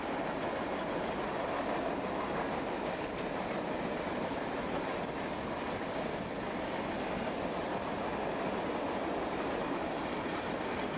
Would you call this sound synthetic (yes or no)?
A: no